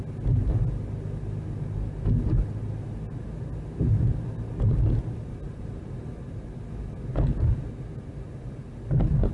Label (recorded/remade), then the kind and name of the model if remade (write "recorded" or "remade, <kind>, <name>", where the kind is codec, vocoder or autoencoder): recorded